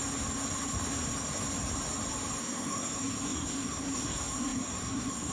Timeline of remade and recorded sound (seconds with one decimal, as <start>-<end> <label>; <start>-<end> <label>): 0.0-2.4 recorded; 2.4-5.3 remade

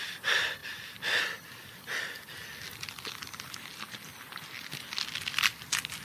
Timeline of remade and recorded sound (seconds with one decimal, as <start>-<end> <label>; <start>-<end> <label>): 0.0-6.0 recorded

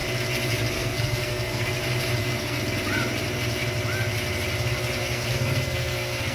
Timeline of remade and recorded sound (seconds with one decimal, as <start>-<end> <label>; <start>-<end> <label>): 0.0-0.7 recorded; 0.7-1.7 remade; 1.7-2.2 recorded; 2.2-2.6 remade; 2.6-5.0 recorded; 5.0-6.3 remade

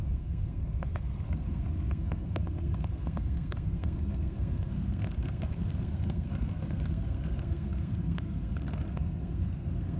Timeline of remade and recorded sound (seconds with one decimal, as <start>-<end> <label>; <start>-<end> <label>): 0.0-10.0 remade

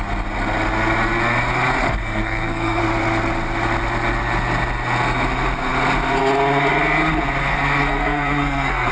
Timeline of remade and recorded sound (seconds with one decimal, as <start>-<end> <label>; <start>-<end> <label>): 0.0-1.9 recorded; 1.9-2.8 remade; 2.8-7.5 recorded; 7.5-8.9 remade

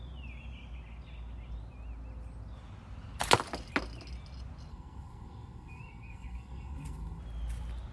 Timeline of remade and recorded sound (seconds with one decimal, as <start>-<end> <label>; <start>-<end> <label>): 0.0-4.7 recorded; 4.7-7.2 remade; 7.2-7.9 recorded

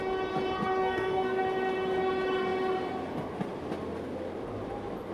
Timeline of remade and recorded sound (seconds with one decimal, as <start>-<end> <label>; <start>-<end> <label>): 0.0-0.8 recorded; 0.8-1.4 remade; 1.4-5.1 recorded